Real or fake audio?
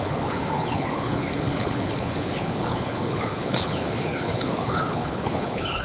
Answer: fake